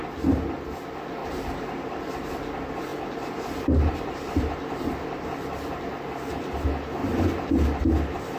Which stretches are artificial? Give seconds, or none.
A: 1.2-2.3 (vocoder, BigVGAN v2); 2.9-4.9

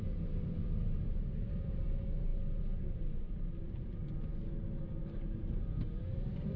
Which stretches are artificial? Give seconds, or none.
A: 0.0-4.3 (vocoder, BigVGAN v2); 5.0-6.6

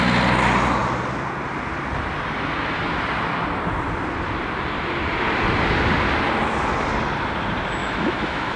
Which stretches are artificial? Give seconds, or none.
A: 7.8-8.6 (autoencoder, DAC-VAE)

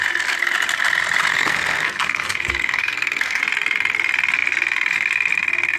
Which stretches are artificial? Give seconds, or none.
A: 1.3-3.4 (codec, SNAC)

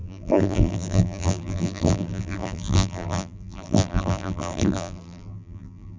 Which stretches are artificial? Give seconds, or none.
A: 0.0-6.0 (vocoder, BigVGAN v2)